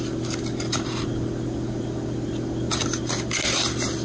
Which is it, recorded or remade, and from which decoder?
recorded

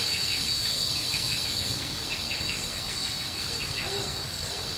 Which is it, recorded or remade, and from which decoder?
remade, codec, SNAC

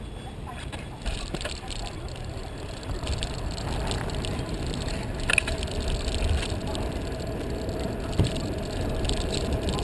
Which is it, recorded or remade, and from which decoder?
recorded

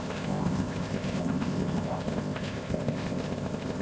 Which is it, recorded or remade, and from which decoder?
remade, codec, ZipCodec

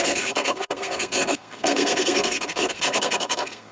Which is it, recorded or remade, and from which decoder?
remade, codec, SNAC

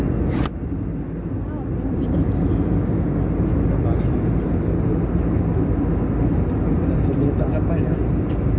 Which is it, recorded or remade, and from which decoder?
recorded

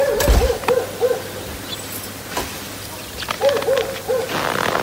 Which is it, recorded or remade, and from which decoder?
recorded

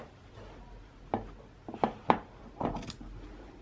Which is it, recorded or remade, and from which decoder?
recorded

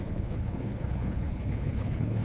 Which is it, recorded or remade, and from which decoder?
remade, codec, HILCodec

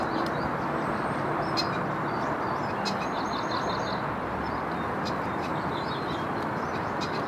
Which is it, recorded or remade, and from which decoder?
remade, vocoder, BigVGAN v2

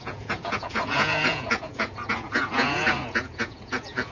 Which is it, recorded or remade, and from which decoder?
remade, vocoder, Vocos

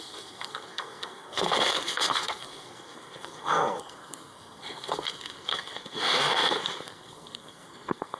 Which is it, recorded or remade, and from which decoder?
remade, codec, SNAC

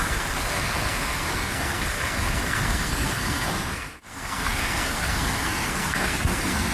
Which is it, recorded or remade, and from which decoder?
remade, codec, SNAC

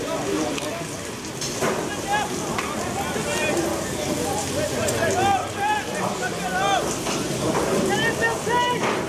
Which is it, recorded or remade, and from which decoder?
recorded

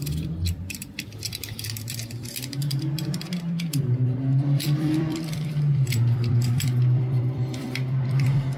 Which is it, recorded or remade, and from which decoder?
remade, vocoder, BigVGAN v2